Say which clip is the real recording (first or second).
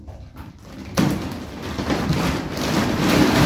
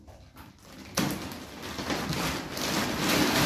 second